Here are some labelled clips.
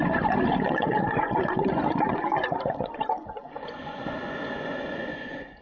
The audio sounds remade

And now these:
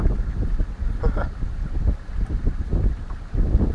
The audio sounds recorded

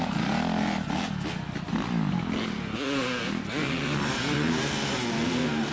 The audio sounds recorded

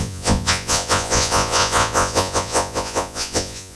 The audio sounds remade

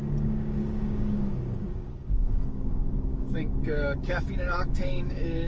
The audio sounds remade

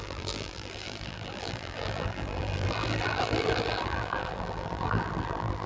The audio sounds remade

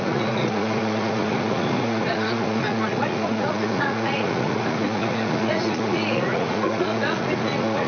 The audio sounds remade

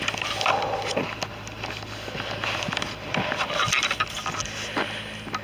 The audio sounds recorded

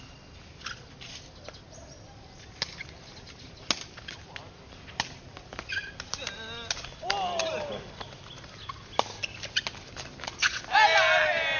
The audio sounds recorded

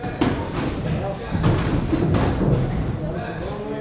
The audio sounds recorded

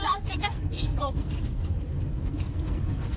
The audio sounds remade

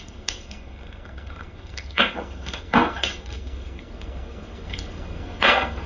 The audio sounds remade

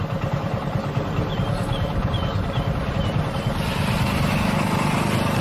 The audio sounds recorded